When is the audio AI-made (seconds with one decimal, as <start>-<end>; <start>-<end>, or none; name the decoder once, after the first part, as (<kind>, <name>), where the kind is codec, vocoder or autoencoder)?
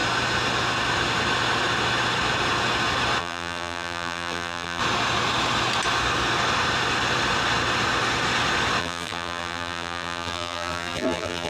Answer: 3.2-4.8 (vocoder, BigVGAN v2); 8.8-11.5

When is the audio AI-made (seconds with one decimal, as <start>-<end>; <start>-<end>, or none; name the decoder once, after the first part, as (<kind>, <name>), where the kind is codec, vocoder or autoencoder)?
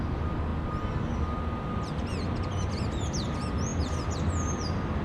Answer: none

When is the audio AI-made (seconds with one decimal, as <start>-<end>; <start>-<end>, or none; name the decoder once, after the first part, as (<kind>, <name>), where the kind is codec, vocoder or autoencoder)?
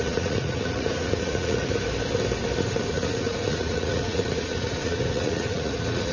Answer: 0.0-1.7 (vocoder, Vocos); 2.9-6.1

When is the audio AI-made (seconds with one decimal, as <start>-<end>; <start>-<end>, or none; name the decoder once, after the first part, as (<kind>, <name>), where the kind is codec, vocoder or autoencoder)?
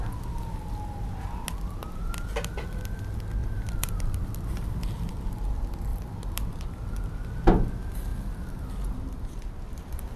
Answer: 3.4-5.1 (vocoder, BigVGAN v2); 5.9-6.6; 8.1-8.7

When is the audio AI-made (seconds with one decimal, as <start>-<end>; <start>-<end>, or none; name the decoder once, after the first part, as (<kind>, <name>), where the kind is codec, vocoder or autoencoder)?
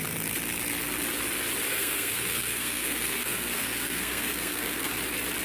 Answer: 1.7-4.9 (codec, SNAC)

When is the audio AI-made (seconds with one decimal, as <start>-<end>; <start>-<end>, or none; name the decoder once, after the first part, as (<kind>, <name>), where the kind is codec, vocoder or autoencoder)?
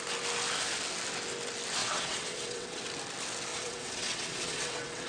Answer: 1.8-2.8 (vocoder, WaveNeXt); 3.5-5.1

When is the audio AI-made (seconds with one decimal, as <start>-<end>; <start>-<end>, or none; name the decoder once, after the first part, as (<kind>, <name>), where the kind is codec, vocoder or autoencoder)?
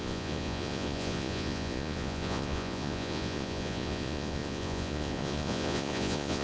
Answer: 0.0-6.4 (vocoder, Vocos)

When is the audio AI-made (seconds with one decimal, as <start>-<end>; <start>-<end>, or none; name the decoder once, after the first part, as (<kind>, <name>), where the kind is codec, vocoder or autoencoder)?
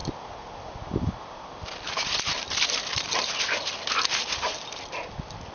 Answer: none